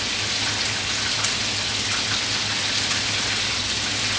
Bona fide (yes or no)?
yes